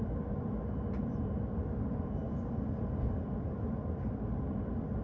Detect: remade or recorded recorded